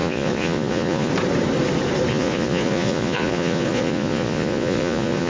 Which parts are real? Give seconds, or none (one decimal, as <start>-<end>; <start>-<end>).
1.1-2.1